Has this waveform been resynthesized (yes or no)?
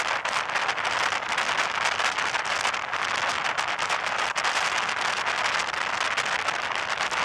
no